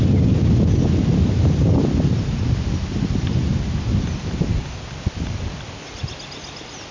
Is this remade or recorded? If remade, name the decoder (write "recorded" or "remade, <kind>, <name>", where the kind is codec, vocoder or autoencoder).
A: recorded